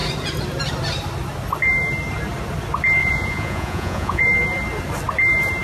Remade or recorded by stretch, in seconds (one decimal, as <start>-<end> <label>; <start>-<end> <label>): 0.0-3.0 recorded; 3.0-4.2 remade; 4.2-5.6 recorded